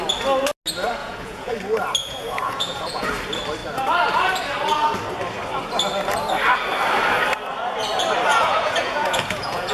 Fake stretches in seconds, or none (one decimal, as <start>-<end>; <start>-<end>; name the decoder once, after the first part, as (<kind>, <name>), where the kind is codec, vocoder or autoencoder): 1.0-1.5 (vocoder, Vocos); 2.0-3.1; 8.3-9.7